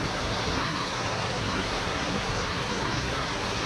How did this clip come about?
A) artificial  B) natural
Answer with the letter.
A